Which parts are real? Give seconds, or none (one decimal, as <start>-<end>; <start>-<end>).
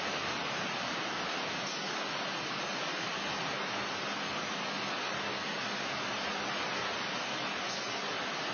0.0-8.5